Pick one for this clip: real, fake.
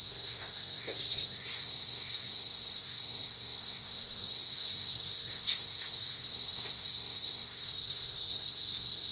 fake